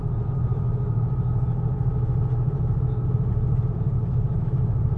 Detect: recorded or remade remade